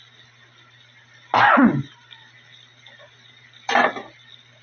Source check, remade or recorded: recorded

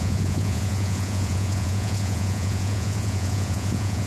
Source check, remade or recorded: remade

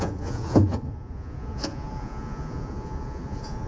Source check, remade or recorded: remade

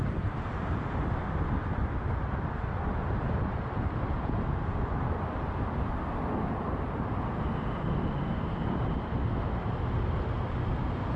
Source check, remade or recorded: recorded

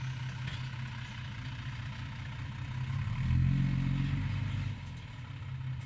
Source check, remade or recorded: recorded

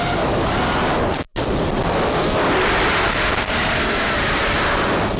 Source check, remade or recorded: recorded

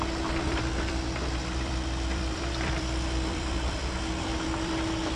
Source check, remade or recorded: remade